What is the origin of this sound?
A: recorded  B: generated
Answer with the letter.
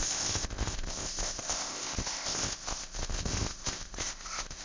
B